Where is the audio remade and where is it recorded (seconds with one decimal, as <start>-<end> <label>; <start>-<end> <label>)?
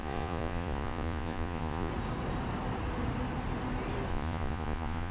0.0-1.9 remade; 1.9-4.1 recorded; 4.1-5.1 remade